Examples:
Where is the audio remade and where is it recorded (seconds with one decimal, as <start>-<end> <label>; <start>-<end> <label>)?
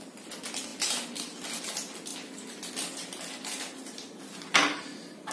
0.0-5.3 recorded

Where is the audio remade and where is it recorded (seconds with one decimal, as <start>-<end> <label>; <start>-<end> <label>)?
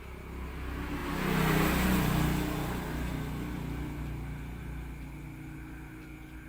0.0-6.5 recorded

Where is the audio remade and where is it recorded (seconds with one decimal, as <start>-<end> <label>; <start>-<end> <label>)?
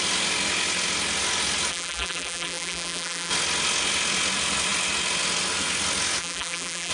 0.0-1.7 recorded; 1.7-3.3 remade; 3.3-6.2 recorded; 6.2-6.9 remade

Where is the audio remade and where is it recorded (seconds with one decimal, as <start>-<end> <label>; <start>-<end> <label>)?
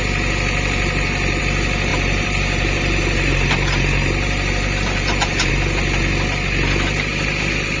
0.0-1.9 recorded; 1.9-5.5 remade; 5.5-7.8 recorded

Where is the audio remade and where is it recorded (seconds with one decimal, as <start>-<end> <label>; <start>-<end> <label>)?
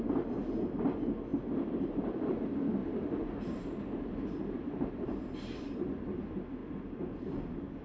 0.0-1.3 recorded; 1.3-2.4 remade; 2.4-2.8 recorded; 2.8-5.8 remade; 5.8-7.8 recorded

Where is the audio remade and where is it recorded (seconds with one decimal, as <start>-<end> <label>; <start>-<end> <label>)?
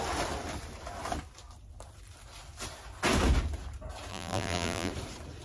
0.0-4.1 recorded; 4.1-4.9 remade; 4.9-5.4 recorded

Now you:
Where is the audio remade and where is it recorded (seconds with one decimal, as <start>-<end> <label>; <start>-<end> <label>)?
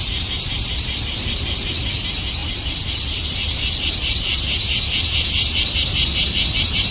0.0-6.9 remade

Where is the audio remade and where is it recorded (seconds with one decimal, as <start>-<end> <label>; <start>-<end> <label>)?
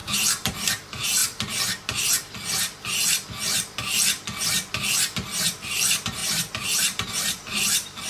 0.0-1.2 remade; 1.2-5.4 recorded; 5.4-8.1 remade